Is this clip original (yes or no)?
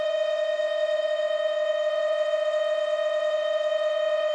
no